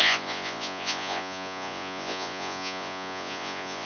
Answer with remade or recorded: remade